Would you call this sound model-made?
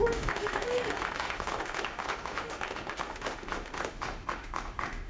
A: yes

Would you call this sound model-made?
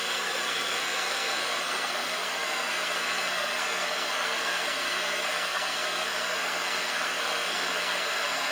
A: yes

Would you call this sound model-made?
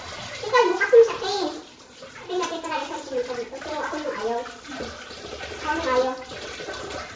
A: no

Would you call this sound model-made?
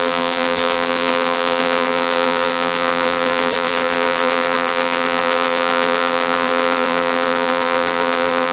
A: yes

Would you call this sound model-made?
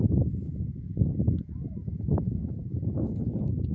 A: yes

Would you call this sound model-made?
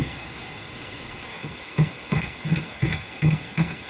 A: yes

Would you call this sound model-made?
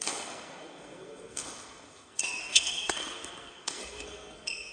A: yes